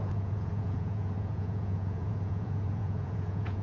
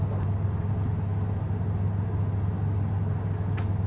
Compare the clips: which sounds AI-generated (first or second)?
first